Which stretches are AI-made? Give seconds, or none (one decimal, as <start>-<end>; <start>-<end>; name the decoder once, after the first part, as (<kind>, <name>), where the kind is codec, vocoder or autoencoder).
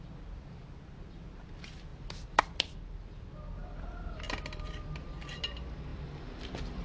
1.9-2.4 (vocoder, BigVGAN v2); 3.6-5.4; 5.9-6.8